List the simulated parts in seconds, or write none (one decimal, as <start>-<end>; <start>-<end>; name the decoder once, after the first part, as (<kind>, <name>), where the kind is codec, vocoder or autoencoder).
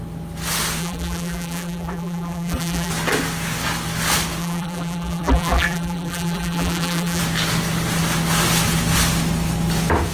0.8-2.9 (vocoder, BigVGAN v2); 4.4-7.2